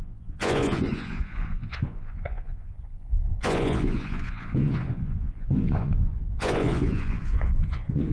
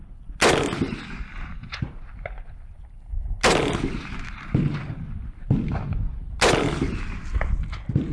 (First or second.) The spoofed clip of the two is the first